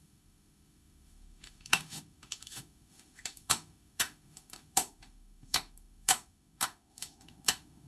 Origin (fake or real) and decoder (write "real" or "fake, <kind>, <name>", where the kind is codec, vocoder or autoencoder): fake, autoencoder, DAC-VAE